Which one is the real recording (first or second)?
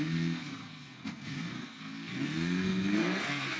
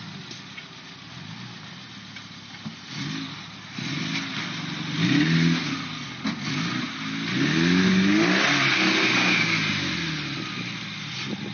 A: second